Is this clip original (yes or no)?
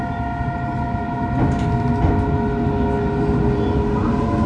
yes